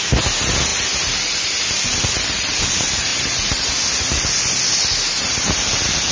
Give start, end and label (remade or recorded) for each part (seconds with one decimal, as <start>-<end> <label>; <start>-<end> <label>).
0.0-3.1 recorded; 3.1-3.7 remade; 3.7-6.1 recorded